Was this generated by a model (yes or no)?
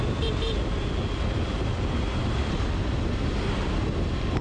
no